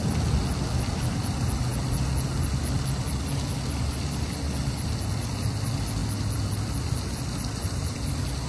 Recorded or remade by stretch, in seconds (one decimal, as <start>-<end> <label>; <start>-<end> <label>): 0.0-8.5 recorded